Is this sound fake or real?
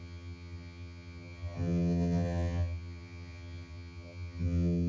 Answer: fake